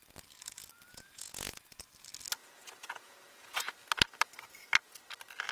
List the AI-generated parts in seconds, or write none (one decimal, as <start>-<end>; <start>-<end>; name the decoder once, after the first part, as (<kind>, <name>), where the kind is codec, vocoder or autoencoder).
0.9-1.7 (vocoder, Vocos); 2.4-3.7